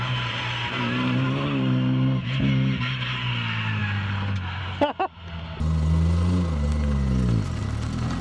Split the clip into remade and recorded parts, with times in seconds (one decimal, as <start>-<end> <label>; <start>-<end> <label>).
0.0-8.2 recorded